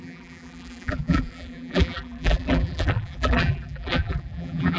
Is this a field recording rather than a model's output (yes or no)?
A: no